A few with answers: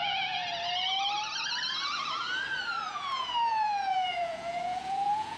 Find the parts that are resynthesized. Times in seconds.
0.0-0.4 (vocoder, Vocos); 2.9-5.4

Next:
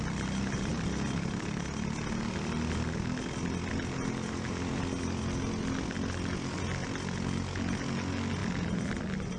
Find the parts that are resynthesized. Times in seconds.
none

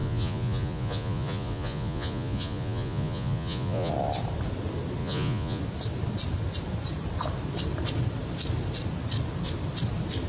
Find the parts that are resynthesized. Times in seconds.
0.0-3.9 (vocoder, Vocos); 5.0-5.6

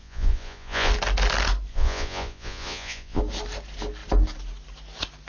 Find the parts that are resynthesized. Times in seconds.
0.0-0.9 (vocoder, Vocos); 1.7-3.2

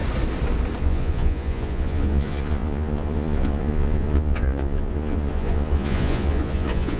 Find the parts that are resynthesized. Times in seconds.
0.8-7.0 (vocoder, Vocos)

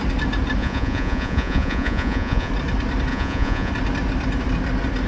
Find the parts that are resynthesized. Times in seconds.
0.6-2.5 (vocoder, Vocos); 3.1-3.7

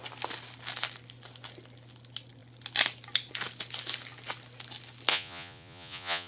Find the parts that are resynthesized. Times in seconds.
5.1-6.3 (vocoder, Vocos)

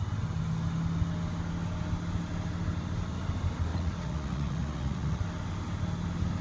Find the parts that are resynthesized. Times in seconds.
3.7-5.2 (vocoder, Vocos)